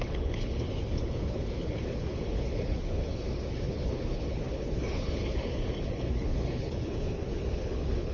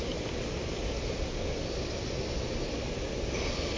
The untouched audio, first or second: second